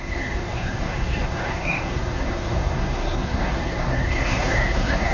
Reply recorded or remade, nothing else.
remade